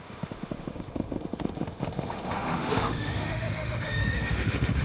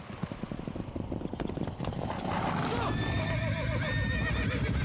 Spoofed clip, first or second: first